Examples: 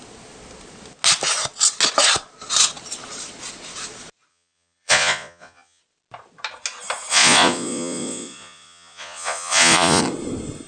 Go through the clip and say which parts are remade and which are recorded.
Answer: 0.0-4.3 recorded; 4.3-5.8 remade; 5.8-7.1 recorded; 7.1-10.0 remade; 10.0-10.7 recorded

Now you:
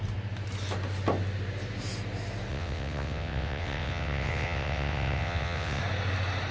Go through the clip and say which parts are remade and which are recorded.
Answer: 0.0-2.5 recorded; 2.5-5.8 remade; 5.8-6.5 recorded

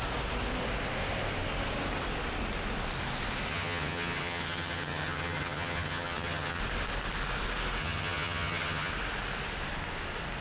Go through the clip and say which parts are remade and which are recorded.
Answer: 0.0-3.5 recorded; 3.5-6.6 remade; 6.6-7.8 recorded; 7.8-8.9 remade; 8.9-10.4 recorded

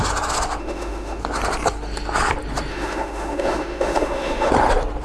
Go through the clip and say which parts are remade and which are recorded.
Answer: 0.0-0.6 recorded; 0.6-1.2 remade; 1.2-2.7 recorded; 2.7-4.5 remade; 4.5-5.0 recorded

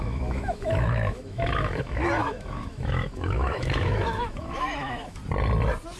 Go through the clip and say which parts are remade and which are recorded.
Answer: 0.0-5.2 remade; 5.2-6.0 recorded